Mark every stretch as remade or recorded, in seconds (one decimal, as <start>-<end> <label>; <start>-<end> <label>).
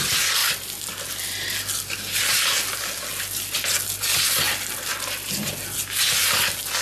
0.0-0.4 recorded; 0.4-1.1 remade; 1.1-4.1 recorded; 4.1-5.5 remade; 5.5-6.8 recorded